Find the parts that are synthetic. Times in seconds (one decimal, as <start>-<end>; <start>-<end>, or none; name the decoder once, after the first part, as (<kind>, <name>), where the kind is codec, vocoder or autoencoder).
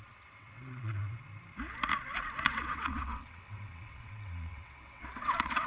0.0-1.0 (vocoder, WaveNeXt); 2.4-5.7